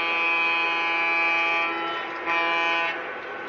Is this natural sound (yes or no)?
yes